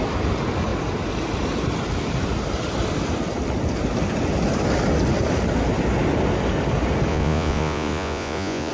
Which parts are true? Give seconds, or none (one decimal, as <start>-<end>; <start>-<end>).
0.0-7.1